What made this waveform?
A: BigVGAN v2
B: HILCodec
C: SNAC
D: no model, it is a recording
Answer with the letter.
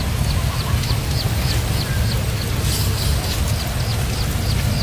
D